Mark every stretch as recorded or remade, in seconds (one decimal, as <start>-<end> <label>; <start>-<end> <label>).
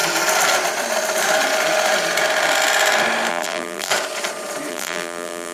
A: 0.0-3.3 recorded; 3.3-3.9 remade; 3.9-4.7 recorded; 4.7-5.5 remade